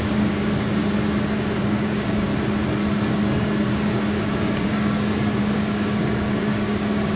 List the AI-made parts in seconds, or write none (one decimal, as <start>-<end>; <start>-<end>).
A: 0.0-0.8; 1.6-2.3; 3.1-7.2